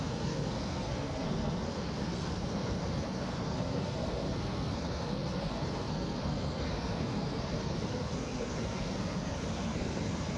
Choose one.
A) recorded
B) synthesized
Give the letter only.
B